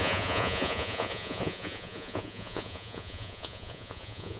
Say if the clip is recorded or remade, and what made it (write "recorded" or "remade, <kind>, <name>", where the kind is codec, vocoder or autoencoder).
remade, vocoder, Vocos